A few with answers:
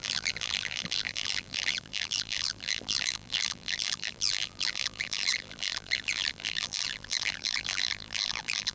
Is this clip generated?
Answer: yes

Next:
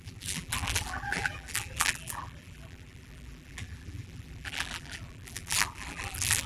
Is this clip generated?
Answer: yes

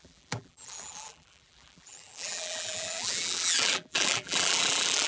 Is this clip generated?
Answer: yes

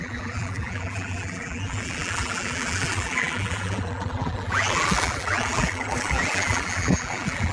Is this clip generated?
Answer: yes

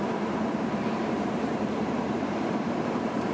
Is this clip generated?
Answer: yes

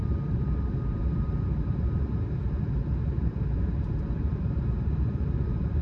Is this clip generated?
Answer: yes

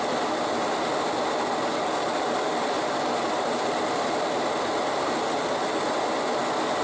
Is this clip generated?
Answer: no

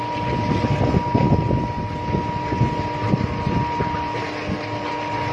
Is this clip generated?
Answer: no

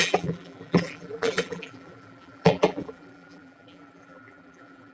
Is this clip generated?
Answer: yes